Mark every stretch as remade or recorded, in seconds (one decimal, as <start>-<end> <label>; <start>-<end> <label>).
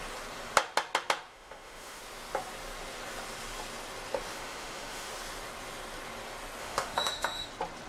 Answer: 0.0-1.3 recorded; 1.3-2.0 remade; 2.0-4.3 recorded; 4.3-5.1 remade; 5.1-6.6 recorded; 6.6-7.5 remade; 7.5-7.9 recorded